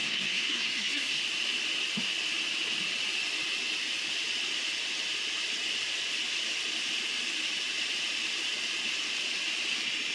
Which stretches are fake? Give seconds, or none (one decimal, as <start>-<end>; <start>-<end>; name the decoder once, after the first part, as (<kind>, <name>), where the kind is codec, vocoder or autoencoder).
0.0-1.2 (codec, SNAC)